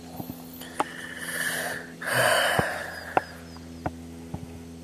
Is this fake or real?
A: real